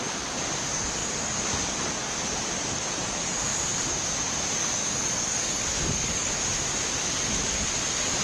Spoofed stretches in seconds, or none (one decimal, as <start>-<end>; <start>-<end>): 4.6-6.3